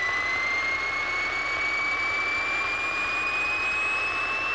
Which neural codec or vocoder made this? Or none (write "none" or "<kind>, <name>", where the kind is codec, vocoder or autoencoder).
none